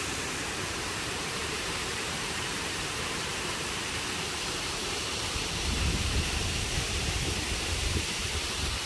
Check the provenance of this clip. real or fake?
fake